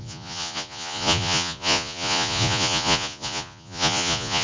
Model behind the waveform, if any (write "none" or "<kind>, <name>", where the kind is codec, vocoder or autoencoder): vocoder, Vocos